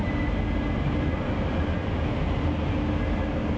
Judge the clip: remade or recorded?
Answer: recorded